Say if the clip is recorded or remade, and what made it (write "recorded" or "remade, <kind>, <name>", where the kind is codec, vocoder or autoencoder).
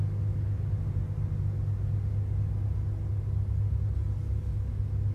recorded